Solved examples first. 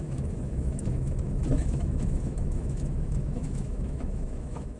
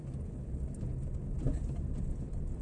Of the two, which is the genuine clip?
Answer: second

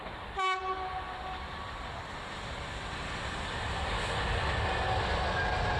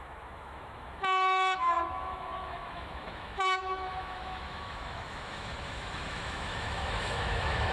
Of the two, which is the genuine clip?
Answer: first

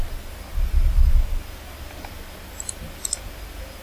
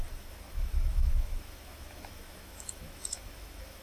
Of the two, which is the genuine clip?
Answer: first